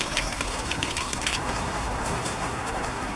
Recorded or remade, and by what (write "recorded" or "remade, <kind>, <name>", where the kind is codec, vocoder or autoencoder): remade, codec, SNAC